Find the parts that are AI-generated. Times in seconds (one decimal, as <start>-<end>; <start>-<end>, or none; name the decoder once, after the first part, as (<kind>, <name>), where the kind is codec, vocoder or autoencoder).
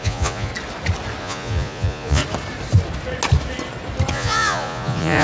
0.0-0.5 (vocoder, Vocos); 1.2-2.2; 4.1-5.2